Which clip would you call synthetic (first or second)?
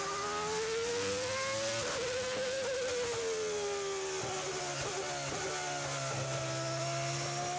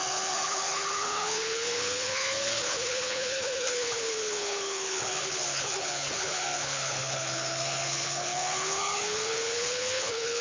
second